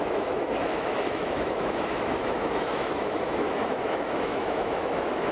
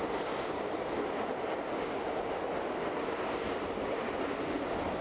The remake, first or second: first